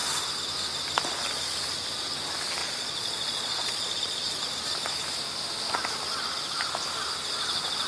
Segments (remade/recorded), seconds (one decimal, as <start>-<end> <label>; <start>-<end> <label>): 0.0-2.6 recorded; 2.6-4.4 remade; 4.4-7.9 recorded